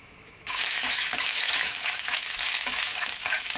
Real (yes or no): no